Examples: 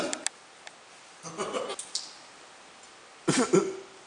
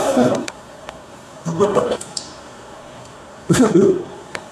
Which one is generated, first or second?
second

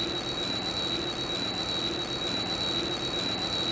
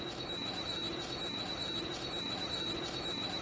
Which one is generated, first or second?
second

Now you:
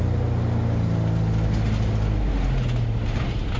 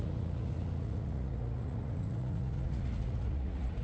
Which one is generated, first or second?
second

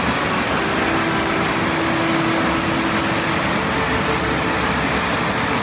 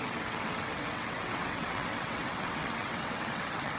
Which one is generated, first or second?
second